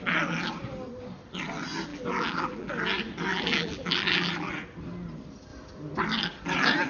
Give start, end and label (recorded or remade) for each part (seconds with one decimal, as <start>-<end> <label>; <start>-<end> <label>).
0.0-1.9 recorded; 1.9-2.7 remade; 2.7-3.3 recorded; 3.3-4.5 remade; 4.5-6.9 recorded